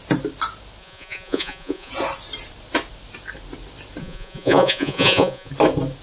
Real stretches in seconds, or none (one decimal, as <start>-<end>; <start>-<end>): 0.0-0.8; 1.9-4.0; 5.5-6.0

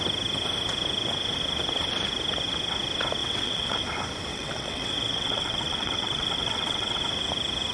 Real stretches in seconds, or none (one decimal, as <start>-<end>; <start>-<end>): 0.0-3.2; 3.8-4.3; 7.0-7.7

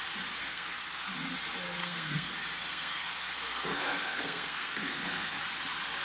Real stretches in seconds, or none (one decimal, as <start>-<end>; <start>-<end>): 0.0-0.4; 1.1-1.8; 2.3-2.7; 5.4-6.0

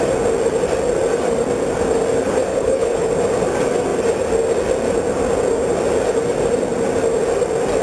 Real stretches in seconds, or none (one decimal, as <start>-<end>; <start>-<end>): 0.0-2.5; 3.1-7.8

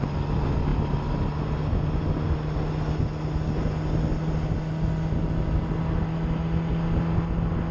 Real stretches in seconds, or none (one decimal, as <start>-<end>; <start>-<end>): 0.0-7.7

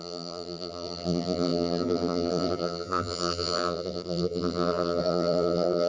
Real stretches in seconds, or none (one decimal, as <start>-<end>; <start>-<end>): none